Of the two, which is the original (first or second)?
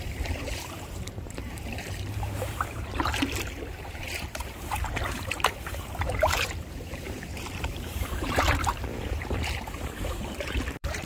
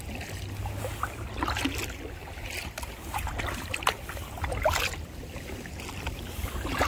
second